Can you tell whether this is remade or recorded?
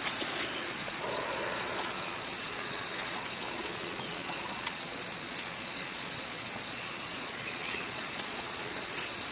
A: remade